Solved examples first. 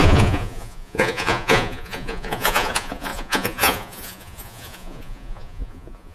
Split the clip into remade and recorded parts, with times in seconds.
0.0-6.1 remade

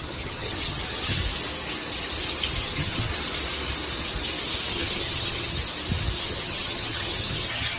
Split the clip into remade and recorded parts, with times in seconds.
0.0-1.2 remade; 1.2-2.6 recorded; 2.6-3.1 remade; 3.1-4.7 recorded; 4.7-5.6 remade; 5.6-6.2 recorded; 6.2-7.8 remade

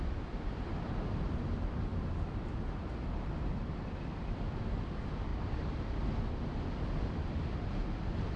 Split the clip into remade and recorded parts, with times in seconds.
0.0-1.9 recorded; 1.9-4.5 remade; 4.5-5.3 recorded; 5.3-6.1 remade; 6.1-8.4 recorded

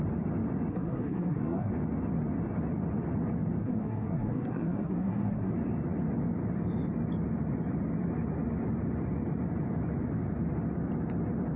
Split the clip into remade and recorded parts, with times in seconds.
0.0-0.7 recorded; 0.7-1.7 remade; 1.7-3.6 recorded; 3.6-5.5 remade; 5.5-11.6 recorded